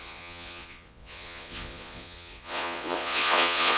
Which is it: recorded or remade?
remade